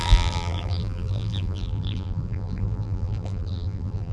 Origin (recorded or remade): remade